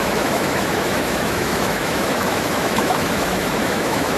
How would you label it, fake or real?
fake